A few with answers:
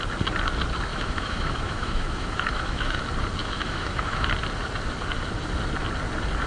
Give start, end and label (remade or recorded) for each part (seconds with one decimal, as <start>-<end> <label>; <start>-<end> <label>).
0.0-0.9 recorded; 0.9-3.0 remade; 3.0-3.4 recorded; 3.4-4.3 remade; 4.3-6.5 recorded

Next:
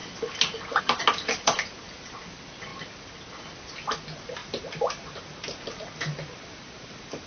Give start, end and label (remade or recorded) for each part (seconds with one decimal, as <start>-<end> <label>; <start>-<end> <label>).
0.0-4.4 recorded; 4.4-7.3 remade

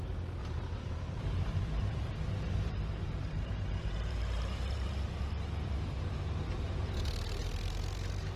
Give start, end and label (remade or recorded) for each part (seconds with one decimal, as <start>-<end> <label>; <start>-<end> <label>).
0.0-0.4 recorded; 0.4-5.2 remade; 5.2-8.4 recorded

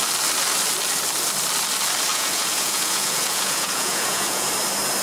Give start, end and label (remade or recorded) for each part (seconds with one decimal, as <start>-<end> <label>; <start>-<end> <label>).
0.0-2.1 recorded; 2.1-4.5 remade; 4.5-5.0 recorded

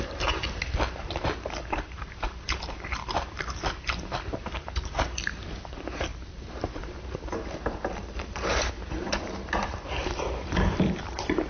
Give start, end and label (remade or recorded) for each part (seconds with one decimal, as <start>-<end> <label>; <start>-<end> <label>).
0.0-11.5 remade